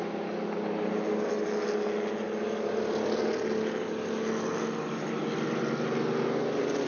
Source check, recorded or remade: recorded